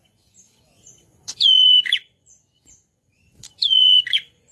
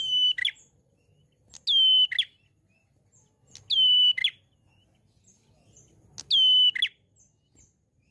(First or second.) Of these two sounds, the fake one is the first